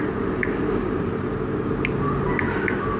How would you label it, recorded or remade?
recorded